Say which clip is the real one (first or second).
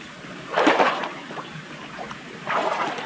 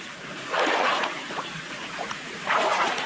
first